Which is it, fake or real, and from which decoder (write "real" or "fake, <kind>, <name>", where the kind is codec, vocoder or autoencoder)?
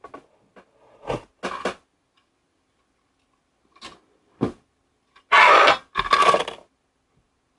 real